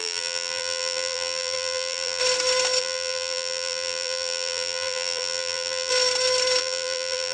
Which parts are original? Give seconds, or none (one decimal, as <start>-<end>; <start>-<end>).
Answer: 2.2-2.8; 5.9-6.6